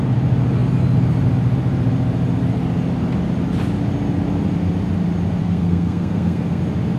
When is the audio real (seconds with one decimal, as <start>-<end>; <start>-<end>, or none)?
0.0-5.4; 6.6-7.0